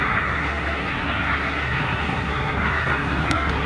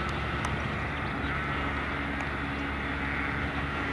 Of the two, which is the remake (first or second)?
first